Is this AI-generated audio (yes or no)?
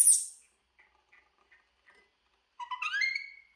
no